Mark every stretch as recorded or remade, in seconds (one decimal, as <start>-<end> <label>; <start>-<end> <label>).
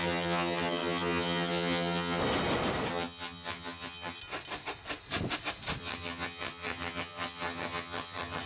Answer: 0.0-2.2 remade; 2.2-2.9 recorded; 2.9-4.2 remade; 4.2-5.8 recorded; 5.8-8.5 remade